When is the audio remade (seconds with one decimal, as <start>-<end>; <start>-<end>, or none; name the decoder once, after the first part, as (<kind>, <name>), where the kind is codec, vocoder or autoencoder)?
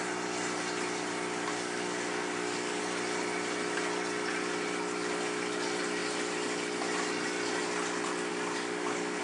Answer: 1.5-2.8 (codec, DAC); 8.3-9.2